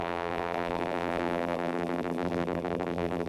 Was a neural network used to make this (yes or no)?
yes